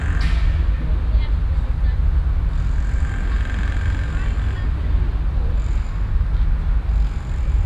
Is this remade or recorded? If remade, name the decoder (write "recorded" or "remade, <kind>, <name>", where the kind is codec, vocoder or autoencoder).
recorded